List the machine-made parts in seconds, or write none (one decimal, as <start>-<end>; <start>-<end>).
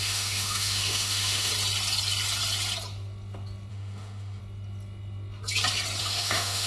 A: 0.0-1.5; 3.7-4.4; 6.0-6.7